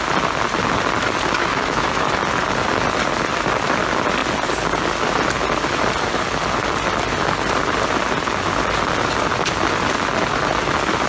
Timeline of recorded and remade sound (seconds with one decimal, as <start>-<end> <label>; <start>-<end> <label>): 0.0-1.5 recorded; 1.5-2.2 remade; 2.2-11.1 recorded